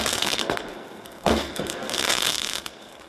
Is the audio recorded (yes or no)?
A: no